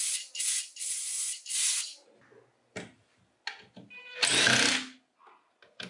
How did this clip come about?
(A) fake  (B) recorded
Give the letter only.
B